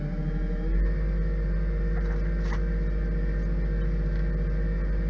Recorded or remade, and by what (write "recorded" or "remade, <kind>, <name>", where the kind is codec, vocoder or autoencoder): recorded